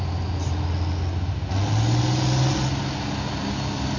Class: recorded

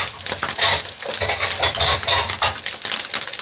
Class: recorded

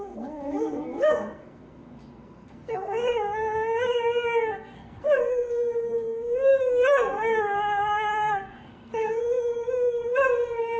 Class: remade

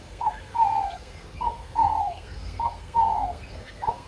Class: remade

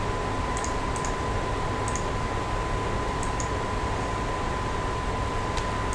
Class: recorded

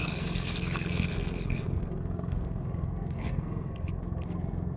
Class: remade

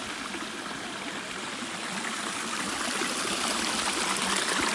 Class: recorded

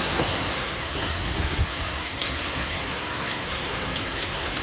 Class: remade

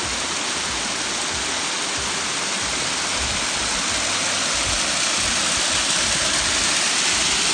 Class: recorded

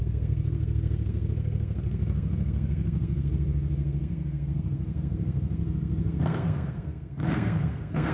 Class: remade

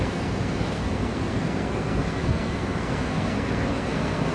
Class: remade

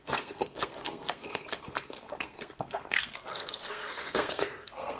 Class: remade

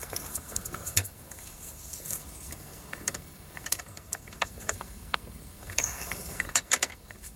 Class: remade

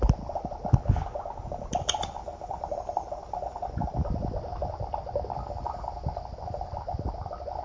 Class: recorded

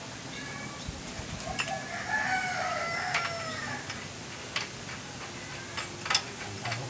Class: recorded